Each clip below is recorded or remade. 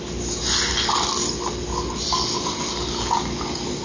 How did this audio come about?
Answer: recorded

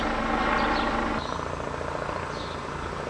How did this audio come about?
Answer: recorded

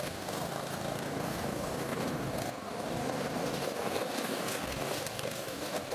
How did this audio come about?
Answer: remade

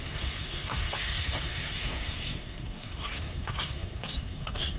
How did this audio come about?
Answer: remade